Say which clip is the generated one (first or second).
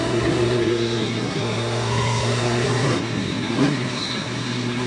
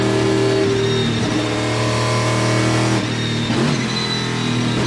first